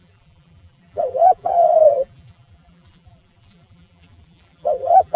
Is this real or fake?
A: fake